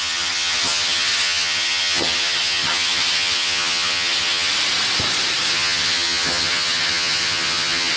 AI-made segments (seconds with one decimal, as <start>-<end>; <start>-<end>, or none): 0.0-4.5; 5.5-8.0